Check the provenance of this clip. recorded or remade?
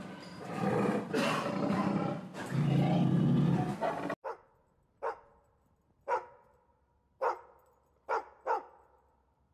recorded